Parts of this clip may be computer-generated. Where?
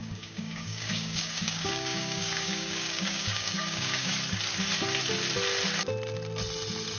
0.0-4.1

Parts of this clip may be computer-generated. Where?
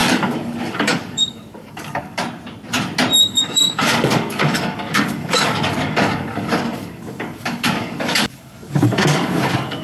0.0-2.2; 3.2-9.8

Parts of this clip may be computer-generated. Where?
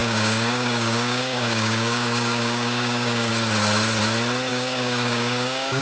0.0-3.3; 4.5-5.8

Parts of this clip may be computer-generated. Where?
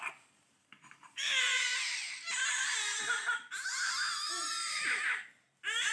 0.6-1.4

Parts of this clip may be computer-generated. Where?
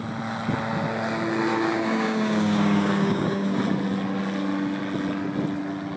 1.5-3.6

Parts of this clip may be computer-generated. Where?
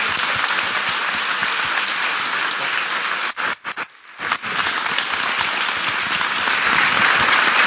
none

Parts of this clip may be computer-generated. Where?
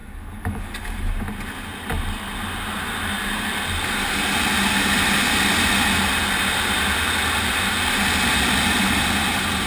0.0-1.1